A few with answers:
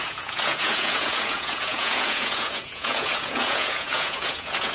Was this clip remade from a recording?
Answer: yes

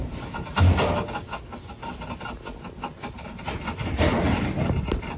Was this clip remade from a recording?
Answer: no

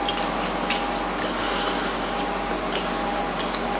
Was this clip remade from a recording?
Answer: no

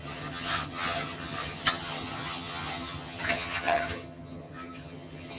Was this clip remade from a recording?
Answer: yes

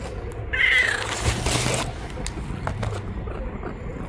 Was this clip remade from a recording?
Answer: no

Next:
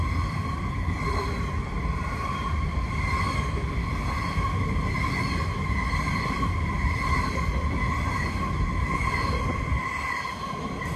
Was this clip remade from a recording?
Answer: no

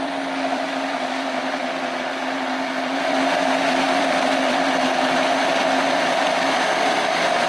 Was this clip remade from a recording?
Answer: yes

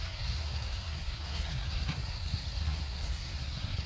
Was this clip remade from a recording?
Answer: yes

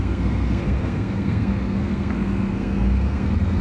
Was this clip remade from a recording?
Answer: yes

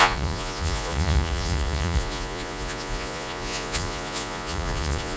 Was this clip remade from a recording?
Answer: yes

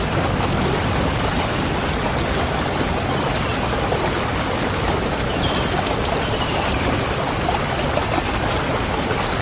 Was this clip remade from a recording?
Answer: no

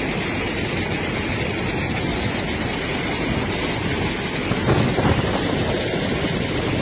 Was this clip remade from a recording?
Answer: no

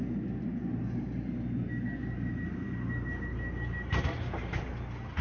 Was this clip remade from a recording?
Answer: no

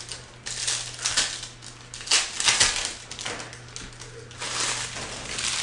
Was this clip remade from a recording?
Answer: no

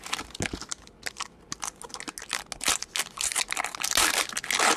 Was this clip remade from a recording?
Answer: no